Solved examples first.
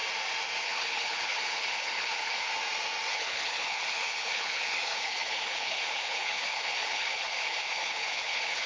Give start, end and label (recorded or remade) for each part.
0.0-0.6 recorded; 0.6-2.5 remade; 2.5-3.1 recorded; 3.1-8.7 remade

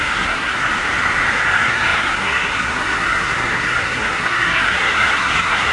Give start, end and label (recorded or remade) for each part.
0.0-0.7 remade; 0.7-1.3 recorded; 1.3-5.7 remade

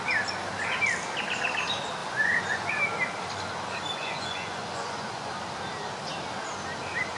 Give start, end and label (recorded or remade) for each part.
0.0-2.0 recorded; 2.0-2.7 remade; 2.7-4.0 recorded; 4.0-5.3 remade; 5.3-7.2 recorded

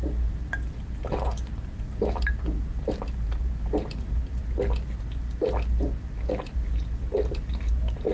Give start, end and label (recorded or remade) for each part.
0.0-4.4 remade; 4.4-6.4 recorded; 6.4-8.1 remade

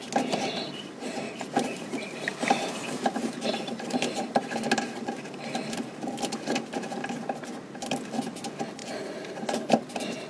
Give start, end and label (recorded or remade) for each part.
0.0-10.3 recorded

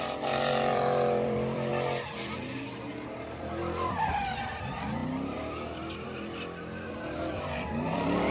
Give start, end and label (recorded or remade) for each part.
0.0-1.7 remade; 1.7-2.9 recorded; 2.9-8.3 remade

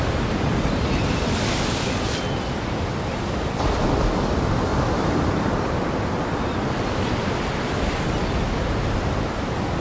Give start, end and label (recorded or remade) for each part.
0.0-4.7 recorded; 4.7-5.5 remade; 5.5-9.8 recorded

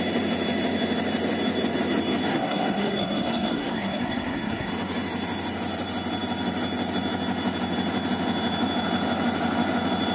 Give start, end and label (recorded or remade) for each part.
0.0-2.3 recorded; 2.3-4.7 remade; 4.7-10.1 recorded